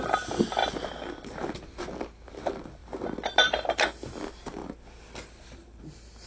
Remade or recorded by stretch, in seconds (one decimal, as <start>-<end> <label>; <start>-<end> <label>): 0.0-6.3 recorded